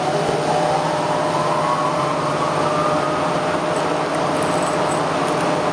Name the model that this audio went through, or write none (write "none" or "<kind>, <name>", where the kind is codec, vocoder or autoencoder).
none